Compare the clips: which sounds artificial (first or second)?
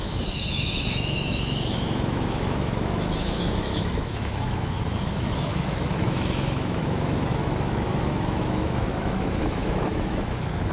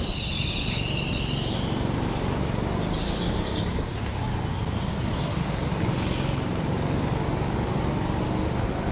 first